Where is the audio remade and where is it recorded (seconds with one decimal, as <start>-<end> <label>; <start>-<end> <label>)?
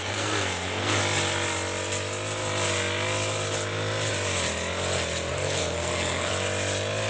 0.0-1.0 remade; 1.0-5.3 recorded; 5.3-6.3 remade; 6.3-7.1 recorded